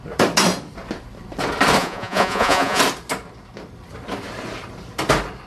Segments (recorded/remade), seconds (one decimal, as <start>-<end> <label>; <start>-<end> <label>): 0.0-1.8 recorded; 1.8-2.8 remade; 2.8-5.5 recorded